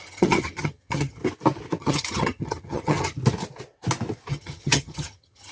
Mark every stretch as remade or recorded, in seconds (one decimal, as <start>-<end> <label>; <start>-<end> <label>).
0.0-1.2 remade; 1.2-1.8 recorded; 1.8-3.2 remade; 3.2-4.3 recorded; 4.3-5.5 remade